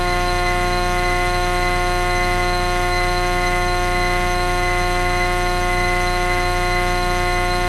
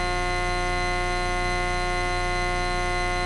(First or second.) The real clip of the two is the second